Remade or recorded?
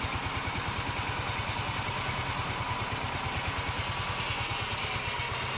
recorded